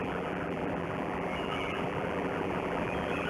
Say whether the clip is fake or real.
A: fake